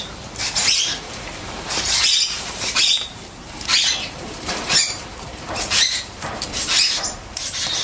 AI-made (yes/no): yes